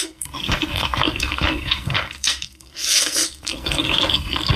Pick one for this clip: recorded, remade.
remade